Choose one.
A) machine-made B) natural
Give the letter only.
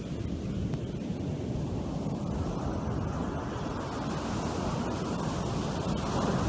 B